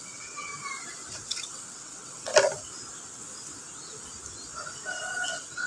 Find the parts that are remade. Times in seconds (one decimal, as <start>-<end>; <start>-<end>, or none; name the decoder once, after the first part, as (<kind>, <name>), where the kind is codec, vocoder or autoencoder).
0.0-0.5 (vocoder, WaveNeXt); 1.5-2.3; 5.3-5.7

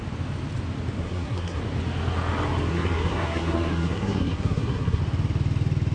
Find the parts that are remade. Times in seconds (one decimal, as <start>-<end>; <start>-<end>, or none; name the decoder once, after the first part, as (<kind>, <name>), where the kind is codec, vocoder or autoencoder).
1.0-1.6 (codec, SNAC); 2.7-5.0

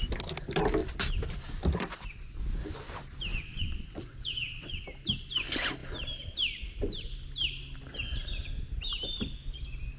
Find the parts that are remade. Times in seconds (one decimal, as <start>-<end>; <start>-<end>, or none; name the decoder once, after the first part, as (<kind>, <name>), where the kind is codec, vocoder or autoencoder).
3.3-4.8 (vocoder, WaveNeXt)

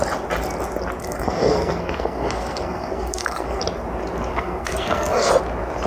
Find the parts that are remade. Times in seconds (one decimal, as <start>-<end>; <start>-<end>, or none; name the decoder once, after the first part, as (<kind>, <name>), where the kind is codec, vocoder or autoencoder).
1.0-3.6 (codec, SNAC); 4.3-5.3

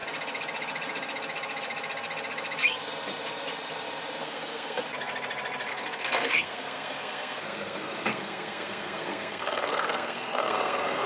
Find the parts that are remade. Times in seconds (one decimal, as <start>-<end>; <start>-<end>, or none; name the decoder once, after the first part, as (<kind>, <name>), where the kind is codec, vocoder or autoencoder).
4.2-4.8 (codec, SNAC); 5.7-11.1

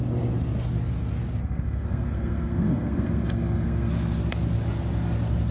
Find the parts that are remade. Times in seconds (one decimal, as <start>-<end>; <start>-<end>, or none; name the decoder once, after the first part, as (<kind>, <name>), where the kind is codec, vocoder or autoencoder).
1.4-3.9 (codec, SNAC)

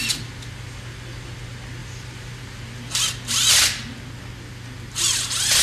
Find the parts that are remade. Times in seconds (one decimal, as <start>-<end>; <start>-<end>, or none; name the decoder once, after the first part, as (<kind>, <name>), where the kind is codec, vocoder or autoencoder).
1.8-2.6 (vocoder, BigVGAN v2)